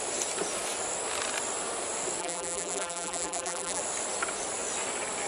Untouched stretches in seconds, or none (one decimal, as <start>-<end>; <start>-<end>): 0.0-2.2; 3.8-5.3